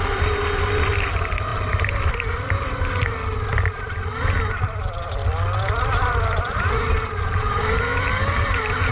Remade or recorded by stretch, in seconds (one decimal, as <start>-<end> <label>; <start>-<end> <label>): 0.0-1.5 remade; 1.5-4.6 recorded; 4.6-5.2 remade; 5.2-5.8 recorded; 5.8-7.9 remade; 7.9-8.4 recorded; 8.4-8.9 remade